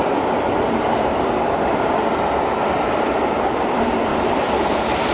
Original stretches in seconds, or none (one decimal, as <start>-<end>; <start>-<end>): 0.0-3.1